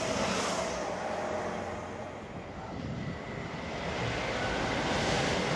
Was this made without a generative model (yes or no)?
yes